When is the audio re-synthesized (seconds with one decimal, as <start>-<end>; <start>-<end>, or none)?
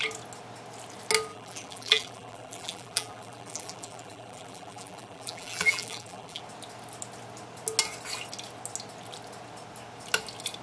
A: 1.3-6.4